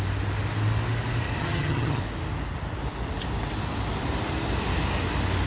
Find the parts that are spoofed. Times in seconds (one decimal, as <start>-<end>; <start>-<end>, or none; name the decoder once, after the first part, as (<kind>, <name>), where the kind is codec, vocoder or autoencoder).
1.4-2.0 (vocoder, HiFi-GAN)